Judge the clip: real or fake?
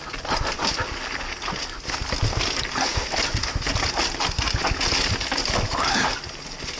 real